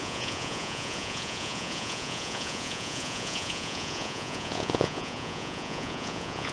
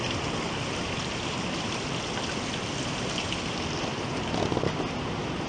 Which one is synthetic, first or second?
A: first